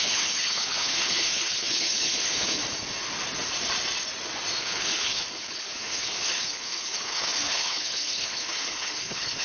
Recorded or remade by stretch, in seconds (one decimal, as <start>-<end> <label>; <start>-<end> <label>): 0.0-2.6 remade; 2.6-4.6 recorded; 4.6-9.4 remade